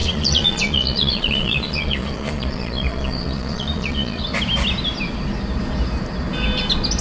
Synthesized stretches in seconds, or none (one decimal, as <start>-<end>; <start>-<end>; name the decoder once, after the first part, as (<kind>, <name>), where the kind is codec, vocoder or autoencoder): 0.0-4.2 (vocoder, Vocos)